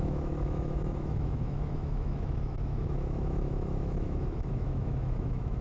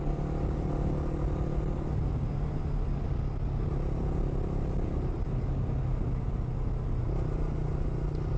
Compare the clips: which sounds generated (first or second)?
first